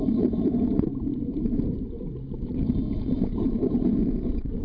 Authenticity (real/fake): fake